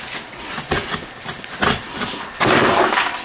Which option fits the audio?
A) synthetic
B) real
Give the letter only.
B